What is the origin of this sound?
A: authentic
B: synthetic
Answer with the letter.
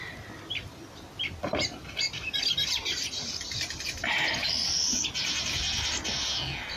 A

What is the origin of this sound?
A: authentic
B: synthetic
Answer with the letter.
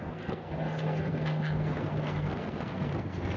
B